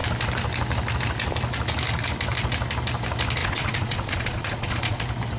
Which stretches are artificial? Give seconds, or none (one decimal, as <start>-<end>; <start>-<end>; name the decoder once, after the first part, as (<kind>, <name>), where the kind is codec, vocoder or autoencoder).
3.4-5.0 (vocoder, Vocos)